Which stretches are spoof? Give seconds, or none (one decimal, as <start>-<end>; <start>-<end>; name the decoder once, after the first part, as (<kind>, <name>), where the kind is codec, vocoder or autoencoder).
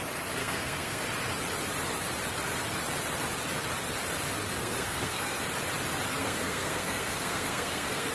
0.4-1.0 (codec, SNAC); 4.6-5.4; 6.2-8.1